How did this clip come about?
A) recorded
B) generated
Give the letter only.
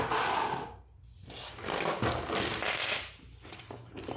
A